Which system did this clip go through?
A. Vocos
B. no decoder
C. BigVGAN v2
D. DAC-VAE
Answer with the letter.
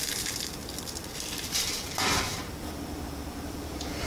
C